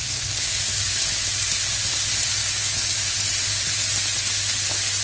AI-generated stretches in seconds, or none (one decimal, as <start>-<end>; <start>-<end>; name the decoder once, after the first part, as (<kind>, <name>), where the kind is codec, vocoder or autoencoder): 0.0-0.6 (codec, DAC); 2.4-3.1